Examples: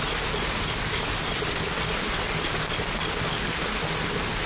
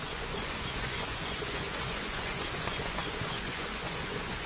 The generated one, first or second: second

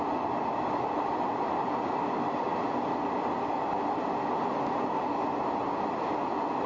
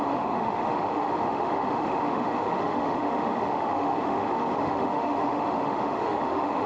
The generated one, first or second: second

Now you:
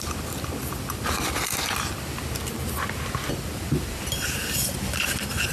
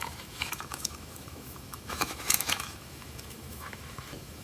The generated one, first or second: second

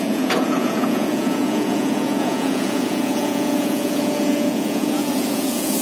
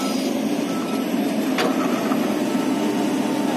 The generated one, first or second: first